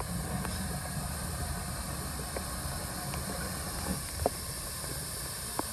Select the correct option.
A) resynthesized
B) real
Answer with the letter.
B